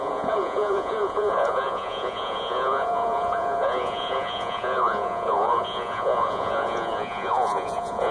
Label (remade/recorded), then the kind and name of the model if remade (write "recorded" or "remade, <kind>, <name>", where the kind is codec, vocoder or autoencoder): remade, vocoder, Vocos